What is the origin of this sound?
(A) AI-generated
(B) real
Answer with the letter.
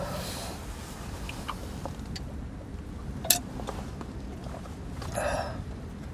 B